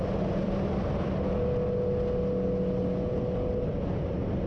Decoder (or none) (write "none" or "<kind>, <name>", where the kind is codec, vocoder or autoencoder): none